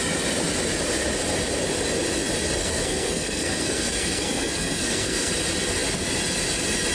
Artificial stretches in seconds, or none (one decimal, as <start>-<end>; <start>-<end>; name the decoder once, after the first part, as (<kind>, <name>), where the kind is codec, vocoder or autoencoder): 2.6-5.3 (codec, SNAC)